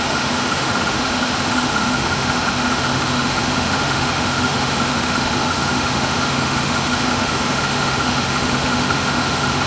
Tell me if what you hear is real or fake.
fake